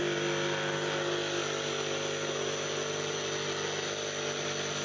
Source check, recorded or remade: recorded